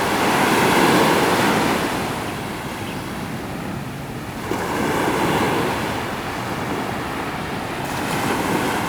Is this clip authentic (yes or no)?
yes